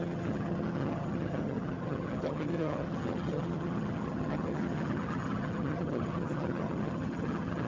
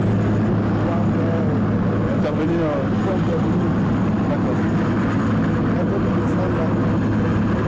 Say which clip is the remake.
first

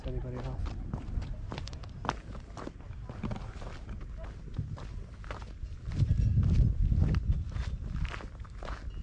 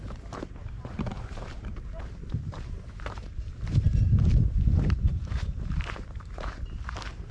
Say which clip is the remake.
second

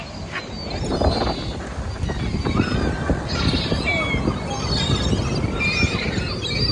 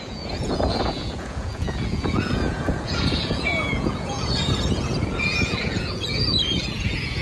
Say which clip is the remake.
second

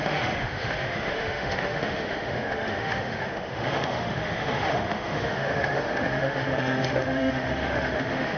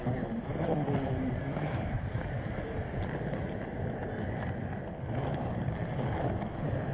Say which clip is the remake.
first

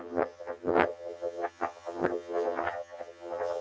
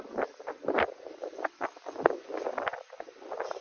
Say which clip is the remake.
first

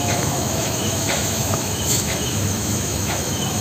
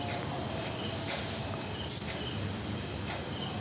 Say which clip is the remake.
first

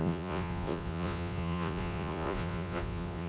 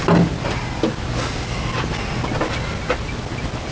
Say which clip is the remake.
first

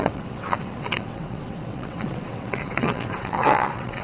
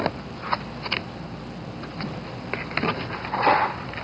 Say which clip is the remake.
first